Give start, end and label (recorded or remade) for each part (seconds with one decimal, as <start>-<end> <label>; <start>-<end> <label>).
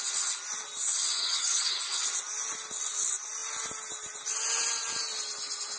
0.0-1.2 recorded; 1.2-1.8 remade; 1.8-5.8 recorded